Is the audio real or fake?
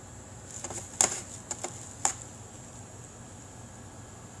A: real